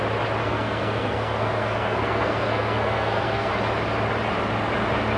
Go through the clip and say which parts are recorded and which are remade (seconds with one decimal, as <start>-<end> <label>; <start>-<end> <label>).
0.0-0.4 recorded; 0.4-3.5 remade; 3.5-5.2 recorded